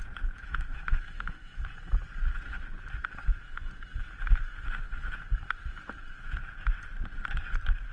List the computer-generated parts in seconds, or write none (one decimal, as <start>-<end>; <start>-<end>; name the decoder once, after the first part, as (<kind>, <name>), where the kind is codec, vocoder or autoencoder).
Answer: 0.4-1.6 (autoencoder, DAC-VAE)